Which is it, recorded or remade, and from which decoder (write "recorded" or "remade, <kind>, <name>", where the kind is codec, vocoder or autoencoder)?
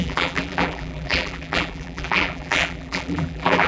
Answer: remade, vocoder, BigVGAN v2